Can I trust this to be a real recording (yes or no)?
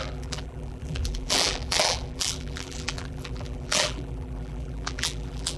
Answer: no